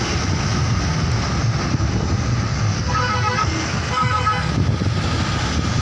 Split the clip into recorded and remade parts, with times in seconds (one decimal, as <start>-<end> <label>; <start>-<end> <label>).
0.0-2.5 recorded; 2.5-4.5 remade; 4.5-5.8 recorded